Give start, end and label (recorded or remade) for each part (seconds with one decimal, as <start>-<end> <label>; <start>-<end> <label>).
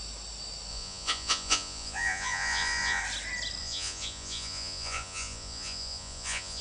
0.0-0.7 recorded; 0.7-3.0 remade; 3.0-3.6 recorded; 3.6-6.6 remade